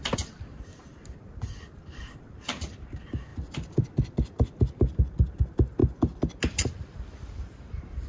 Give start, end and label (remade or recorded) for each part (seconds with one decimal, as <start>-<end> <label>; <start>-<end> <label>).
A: 0.0-8.1 recorded